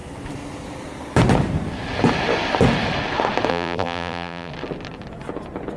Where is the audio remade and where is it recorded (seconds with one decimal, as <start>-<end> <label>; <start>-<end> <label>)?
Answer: 0.0-3.5 recorded; 3.5-4.5 remade; 4.5-5.8 recorded